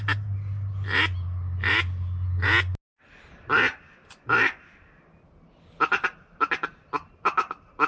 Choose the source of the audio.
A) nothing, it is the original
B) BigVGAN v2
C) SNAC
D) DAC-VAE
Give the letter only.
A